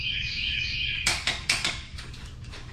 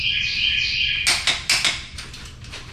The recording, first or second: second